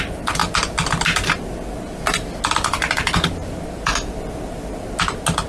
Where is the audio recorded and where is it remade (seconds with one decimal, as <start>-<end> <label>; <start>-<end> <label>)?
0.0-5.5 recorded